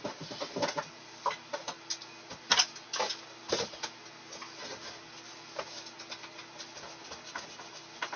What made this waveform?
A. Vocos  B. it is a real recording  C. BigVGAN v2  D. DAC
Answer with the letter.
B